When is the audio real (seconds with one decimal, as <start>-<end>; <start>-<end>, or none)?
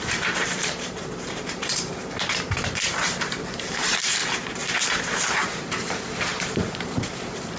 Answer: 4.2-4.8